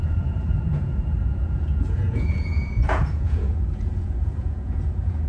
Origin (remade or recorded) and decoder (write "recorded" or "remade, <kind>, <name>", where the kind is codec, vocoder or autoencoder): remade, vocoder, Vocos